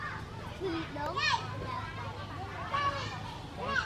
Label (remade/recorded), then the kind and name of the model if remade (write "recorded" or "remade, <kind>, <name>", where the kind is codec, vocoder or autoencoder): recorded